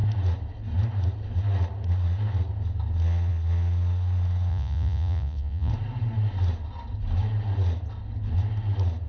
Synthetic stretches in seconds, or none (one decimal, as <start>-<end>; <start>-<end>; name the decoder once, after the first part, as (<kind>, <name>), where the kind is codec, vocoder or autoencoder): 4.5-5.7 (vocoder, Vocos)